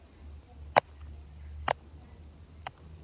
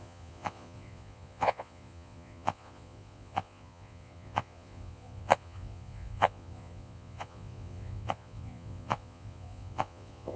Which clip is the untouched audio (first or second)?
first